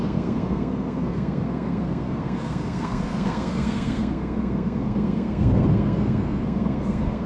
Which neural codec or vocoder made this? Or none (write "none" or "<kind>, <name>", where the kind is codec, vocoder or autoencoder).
codec, SNAC